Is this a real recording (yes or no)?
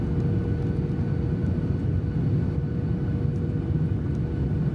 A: yes